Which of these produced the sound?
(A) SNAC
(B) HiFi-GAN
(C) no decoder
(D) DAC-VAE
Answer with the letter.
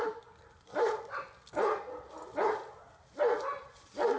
C